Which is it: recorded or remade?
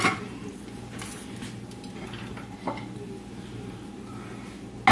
recorded